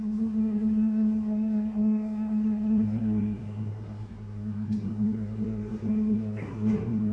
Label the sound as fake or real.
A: fake